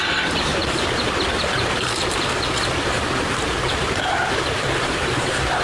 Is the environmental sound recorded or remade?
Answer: remade